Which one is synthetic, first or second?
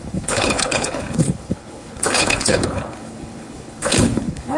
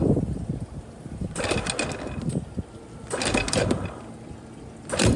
first